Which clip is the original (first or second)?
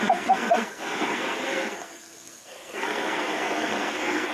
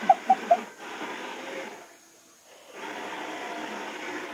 second